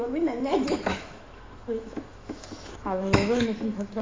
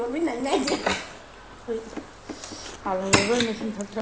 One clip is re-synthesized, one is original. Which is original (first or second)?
second